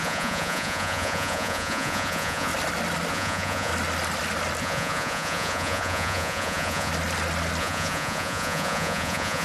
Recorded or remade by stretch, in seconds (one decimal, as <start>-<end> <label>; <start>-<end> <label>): 0.0-2.5 remade; 2.5-3.1 recorded; 3.1-3.7 remade; 3.7-4.6 recorded; 4.6-6.9 remade; 6.9-7.6 recorded; 7.6-9.4 remade